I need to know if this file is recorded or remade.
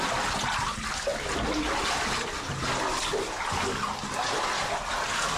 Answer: recorded